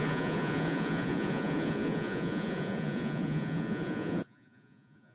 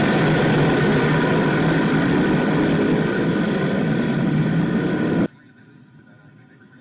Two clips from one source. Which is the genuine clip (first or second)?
second